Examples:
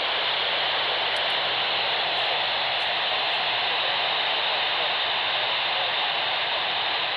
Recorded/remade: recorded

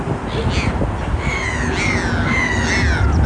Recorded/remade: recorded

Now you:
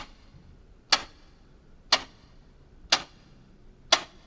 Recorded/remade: recorded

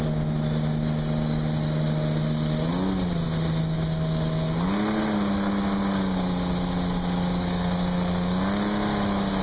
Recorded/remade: recorded